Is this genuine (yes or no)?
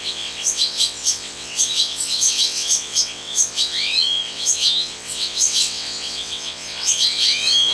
no